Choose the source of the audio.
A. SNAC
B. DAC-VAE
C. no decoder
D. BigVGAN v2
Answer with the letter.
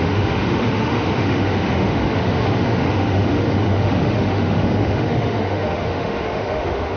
B